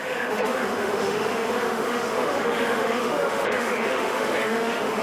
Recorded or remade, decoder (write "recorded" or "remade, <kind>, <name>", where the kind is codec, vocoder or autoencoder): remade, autoencoder, DAC-VAE